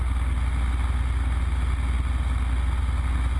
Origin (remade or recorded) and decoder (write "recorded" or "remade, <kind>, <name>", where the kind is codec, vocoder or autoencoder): recorded